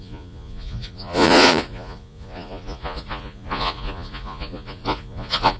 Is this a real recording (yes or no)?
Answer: no